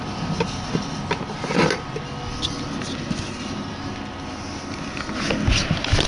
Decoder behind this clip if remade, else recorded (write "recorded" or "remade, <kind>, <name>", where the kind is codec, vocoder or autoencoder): recorded